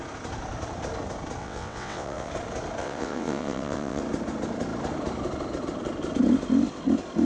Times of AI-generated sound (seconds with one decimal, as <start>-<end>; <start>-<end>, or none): 1.4-2.3; 2.8-4.0